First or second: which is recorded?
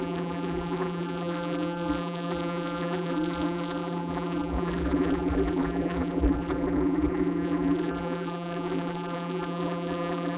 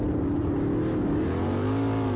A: second